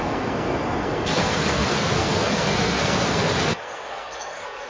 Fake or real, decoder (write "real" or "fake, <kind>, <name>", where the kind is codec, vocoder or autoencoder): fake, codec, SNAC